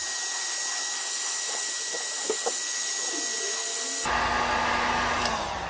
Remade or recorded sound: recorded